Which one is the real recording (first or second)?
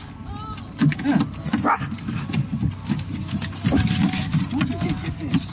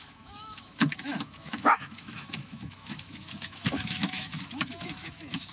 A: first